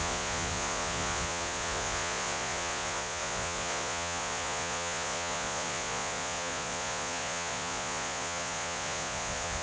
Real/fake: fake